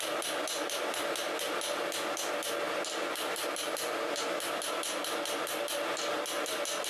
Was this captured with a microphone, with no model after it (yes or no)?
yes